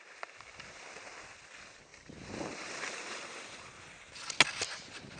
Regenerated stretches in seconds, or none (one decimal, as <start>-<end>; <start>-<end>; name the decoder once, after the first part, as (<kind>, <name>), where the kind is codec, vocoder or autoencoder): 1.9-3.7 (vocoder, BigVGAN v2)